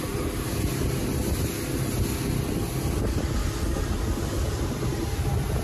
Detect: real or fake real